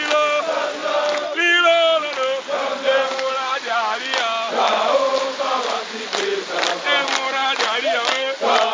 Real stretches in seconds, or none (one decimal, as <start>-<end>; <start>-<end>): 0.0-5.1; 6.4-8.7